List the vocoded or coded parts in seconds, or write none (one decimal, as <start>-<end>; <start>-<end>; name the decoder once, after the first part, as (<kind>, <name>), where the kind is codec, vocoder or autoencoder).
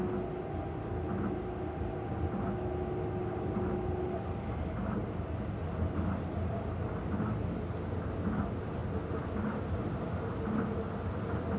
none